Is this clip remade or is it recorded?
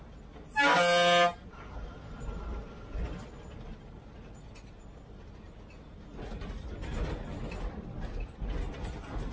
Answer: recorded